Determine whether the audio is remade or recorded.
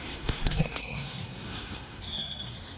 remade